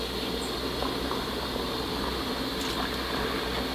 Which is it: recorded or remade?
recorded